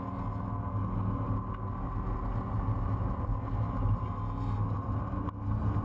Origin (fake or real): real